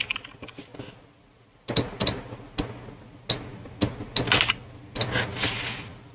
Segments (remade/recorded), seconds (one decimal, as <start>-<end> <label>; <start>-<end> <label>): 0.0-6.1 recorded